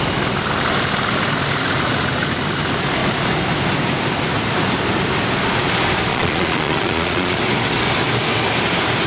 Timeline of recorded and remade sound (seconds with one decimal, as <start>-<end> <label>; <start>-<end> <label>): 0.0-6.1 recorded; 6.1-7.4 remade; 7.4-9.1 recorded